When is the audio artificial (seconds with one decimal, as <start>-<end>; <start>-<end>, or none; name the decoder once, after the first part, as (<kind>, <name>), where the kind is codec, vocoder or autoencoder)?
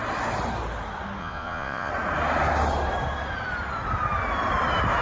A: 1.2-1.9 (vocoder, Vocos)